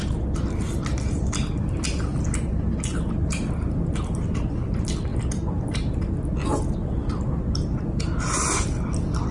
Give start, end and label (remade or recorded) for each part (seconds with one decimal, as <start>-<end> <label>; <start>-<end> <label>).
0.0-9.3 recorded